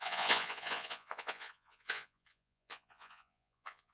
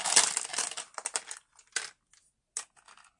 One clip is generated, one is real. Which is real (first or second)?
second